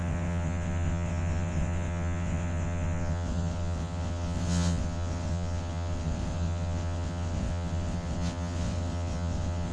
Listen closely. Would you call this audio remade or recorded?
remade